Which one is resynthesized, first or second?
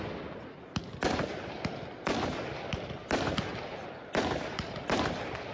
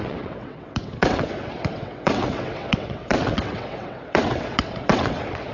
second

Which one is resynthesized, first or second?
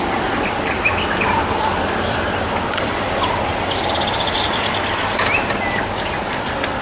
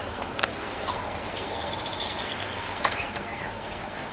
second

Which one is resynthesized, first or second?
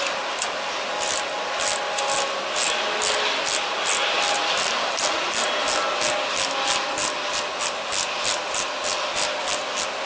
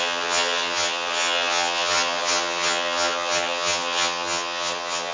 second